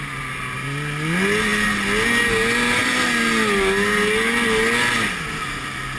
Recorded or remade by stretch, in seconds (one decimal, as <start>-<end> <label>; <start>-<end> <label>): 0.0-6.0 recorded